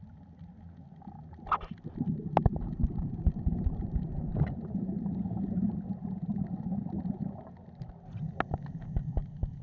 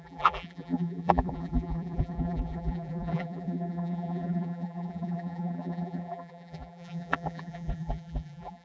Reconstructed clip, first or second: second